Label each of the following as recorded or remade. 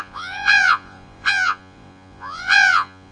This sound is remade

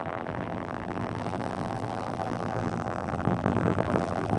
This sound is remade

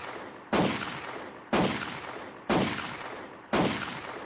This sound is recorded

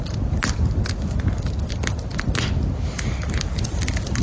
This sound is recorded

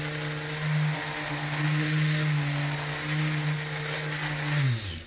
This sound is recorded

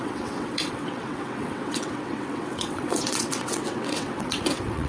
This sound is remade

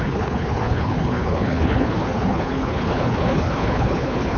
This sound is remade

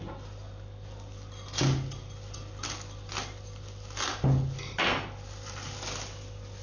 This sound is recorded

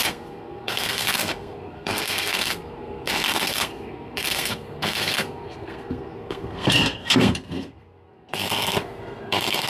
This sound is remade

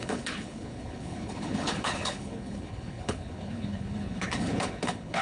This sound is remade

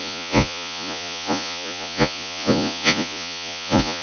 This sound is remade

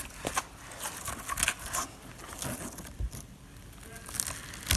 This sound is recorded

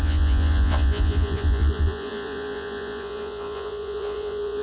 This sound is remade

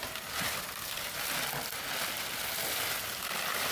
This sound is recorded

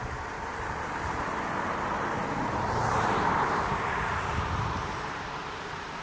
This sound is remade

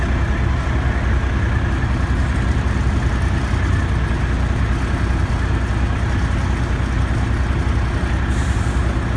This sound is recorded